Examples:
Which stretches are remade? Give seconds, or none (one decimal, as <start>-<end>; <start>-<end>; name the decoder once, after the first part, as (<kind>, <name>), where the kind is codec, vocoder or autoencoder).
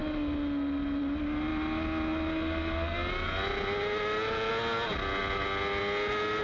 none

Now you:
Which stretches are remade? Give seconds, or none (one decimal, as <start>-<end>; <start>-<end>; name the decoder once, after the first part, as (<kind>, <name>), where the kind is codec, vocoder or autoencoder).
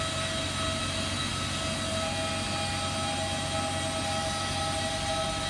none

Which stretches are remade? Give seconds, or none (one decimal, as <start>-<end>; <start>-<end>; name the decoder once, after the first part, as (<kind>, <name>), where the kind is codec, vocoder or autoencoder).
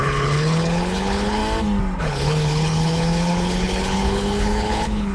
0.0-1.4 (codec, HILCodec); 2.0-5.1